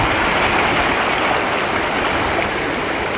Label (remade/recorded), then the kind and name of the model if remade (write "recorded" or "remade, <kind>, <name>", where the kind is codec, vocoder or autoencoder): recorded